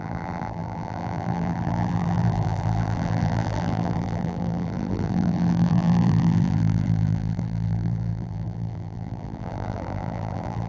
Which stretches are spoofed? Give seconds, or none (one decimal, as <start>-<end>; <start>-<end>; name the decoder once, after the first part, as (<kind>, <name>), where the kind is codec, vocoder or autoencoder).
0.0-10.7 (vocoder, BigVGAN v2)